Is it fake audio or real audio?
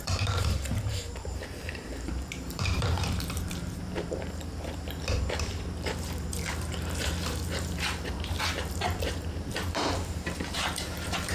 fake